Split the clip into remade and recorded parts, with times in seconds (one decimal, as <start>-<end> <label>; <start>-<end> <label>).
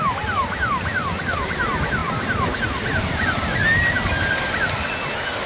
0.0-5.5 recorded